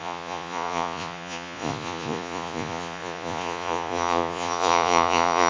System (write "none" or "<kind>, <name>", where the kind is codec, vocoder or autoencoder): vocoder, Vocos